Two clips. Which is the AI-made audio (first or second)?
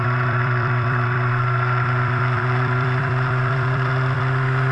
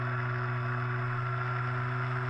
first